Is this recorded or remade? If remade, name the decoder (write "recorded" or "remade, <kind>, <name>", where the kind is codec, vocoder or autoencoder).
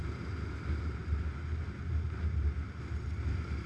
recorded